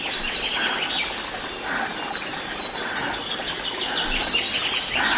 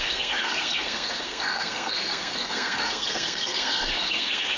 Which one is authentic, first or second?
first